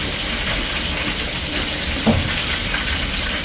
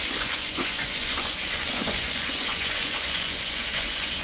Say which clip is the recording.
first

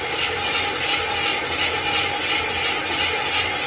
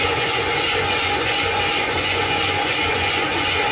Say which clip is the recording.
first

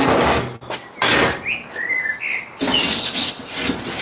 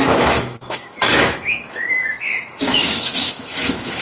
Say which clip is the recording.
first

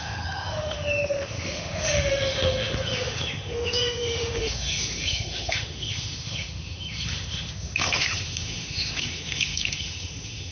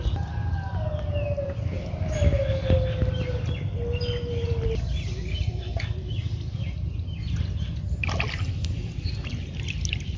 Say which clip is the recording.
second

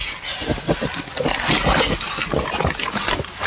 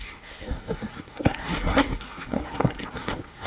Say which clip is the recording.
first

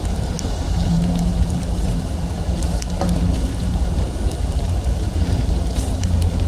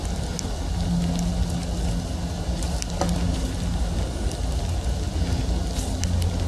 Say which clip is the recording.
second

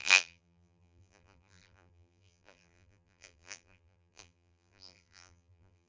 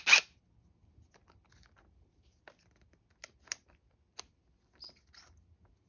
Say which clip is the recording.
second